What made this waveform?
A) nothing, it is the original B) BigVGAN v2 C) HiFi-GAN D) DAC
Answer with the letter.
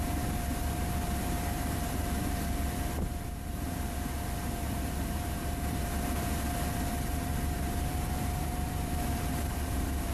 B